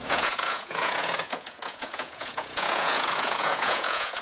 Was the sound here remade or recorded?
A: remade